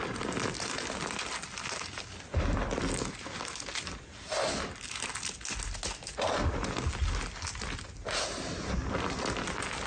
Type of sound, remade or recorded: recorded